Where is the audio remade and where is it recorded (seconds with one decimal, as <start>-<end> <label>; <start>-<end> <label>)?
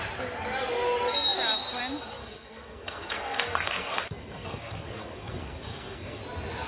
0.0-2.2 recorded; 2.2-6.2 remade; 6.2-6.7 recorded